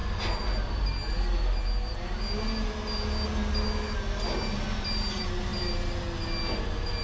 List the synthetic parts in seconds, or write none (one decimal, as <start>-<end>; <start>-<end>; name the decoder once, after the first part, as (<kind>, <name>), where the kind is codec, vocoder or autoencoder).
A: none